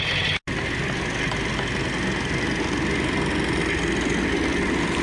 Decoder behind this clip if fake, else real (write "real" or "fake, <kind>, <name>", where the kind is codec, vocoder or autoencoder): real